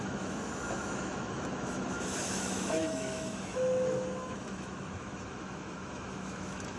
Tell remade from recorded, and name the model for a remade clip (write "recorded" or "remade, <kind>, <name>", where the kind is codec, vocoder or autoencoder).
remade, autoencoder, DAC-VAE